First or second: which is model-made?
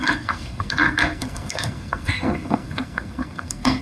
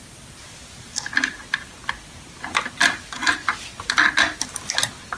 first